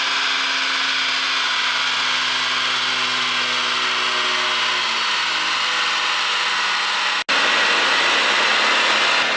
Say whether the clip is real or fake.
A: real